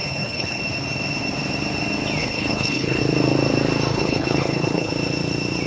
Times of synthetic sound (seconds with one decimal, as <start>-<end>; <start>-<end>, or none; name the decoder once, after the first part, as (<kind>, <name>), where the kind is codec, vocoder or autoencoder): 0.0-0.6 (codec, HILCodec); 2.2-3.0; 3.9-4.9